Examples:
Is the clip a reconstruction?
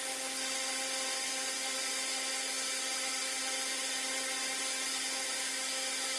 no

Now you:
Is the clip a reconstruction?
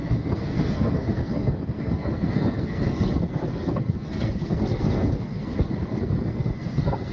yes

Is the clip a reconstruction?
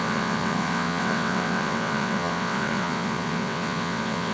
yes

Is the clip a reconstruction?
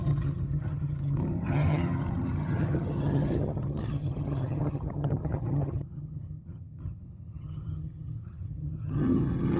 yes